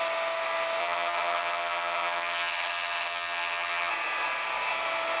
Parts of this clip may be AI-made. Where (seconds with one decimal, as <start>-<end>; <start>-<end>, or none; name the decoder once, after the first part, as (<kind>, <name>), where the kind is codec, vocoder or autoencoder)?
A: 0.8-3.9 (vocoder, HiFi-GAN)